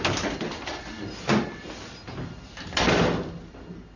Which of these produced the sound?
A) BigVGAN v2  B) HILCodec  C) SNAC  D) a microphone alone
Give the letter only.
D